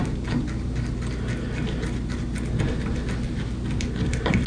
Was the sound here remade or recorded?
recorded